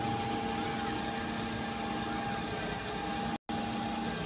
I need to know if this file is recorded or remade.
recorded